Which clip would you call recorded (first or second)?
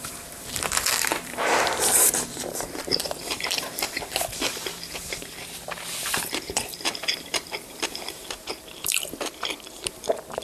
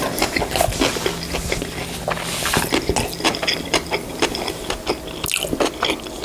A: second